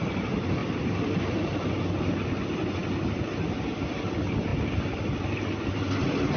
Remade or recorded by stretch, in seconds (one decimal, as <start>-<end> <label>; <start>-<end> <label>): 0.0-6.4 recorded